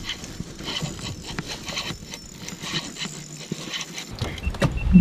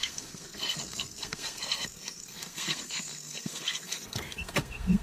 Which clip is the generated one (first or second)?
second